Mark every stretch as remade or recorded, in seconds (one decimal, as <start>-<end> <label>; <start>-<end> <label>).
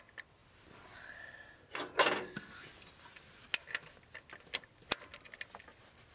0.0-6.1 recorded